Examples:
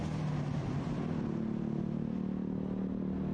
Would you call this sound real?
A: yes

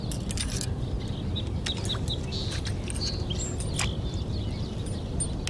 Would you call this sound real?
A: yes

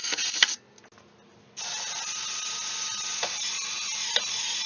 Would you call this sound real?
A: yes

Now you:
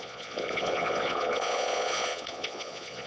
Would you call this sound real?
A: no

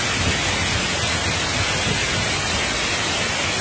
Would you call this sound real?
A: yes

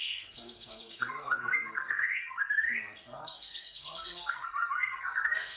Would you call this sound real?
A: no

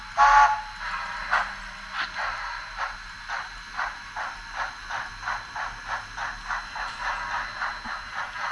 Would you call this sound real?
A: yes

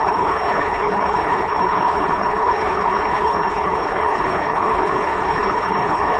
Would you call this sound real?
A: no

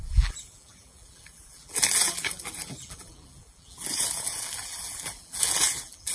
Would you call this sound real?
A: no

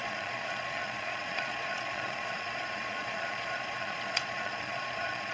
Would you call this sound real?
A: no